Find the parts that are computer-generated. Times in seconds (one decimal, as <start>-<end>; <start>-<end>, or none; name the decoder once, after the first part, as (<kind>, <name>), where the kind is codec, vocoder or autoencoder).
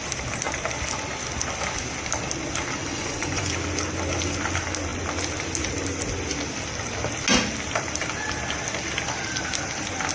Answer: 2.8-3.5 (vocoder, Vocos)